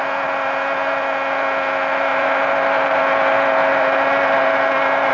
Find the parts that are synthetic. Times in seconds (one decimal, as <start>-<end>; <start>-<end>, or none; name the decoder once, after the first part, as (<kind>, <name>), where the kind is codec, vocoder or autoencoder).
2.1-3.0 (vocoder, BigVGAN v2); 3.7-5.1